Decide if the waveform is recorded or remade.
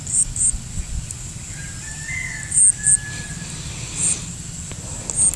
recorded